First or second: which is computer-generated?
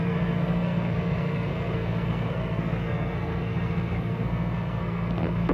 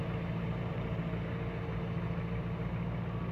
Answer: first